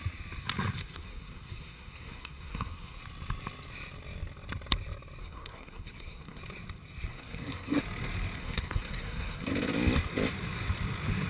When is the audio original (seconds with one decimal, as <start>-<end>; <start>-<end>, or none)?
0.0-0.8; 3.0-5.2; 6.4-7.1; 7.8-8.4; 9.5-11.3